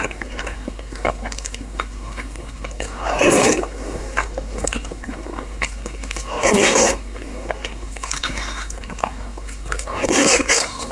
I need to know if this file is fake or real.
fake